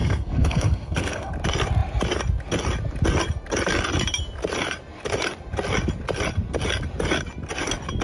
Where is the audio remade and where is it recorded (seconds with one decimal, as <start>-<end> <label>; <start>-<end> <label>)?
0.0-1.3 remade; 1.3-8.0 recorded

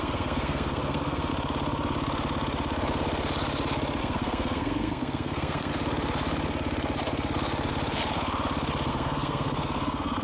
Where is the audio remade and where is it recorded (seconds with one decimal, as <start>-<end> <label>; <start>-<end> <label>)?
0.0-1.3 remade; 1.3-4.0 recorded; 4.0-5.7 remade; 5.7-8.9 recorded; 8.9-10.2 remade

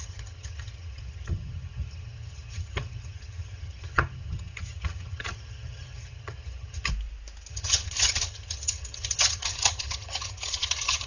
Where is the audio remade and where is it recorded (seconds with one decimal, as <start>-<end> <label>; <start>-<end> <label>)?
0.0-6.9 remade; 6.9-7.5 recorded; 7.5-11.1 remade

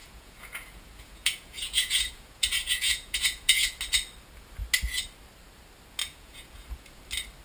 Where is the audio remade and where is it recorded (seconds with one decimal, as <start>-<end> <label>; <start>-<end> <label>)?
0.0-3.8 remade; 3.8-6.0 recorded; 6.0-7.0 remade; 7.0-7.4 recorded

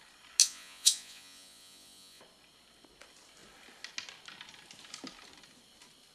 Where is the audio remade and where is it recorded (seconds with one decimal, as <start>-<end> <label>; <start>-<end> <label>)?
0.0-0.4 recorded; 0.4-2.2 remade; 2.2-6.1 recorded

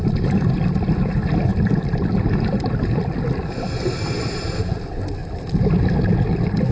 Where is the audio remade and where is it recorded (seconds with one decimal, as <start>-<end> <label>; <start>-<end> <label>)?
0.0-5.2 remade; 5.2-6.7 recorded

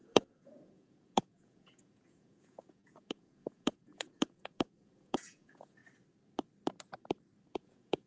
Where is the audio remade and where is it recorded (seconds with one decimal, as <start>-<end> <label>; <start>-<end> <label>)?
0.0-5.8 remade; 5.8-7.5 recorded; 7.5-8.1 remade